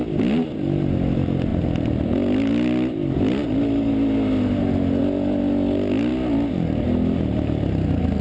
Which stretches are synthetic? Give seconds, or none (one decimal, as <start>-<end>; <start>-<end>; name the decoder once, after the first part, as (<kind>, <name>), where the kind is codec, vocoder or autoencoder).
none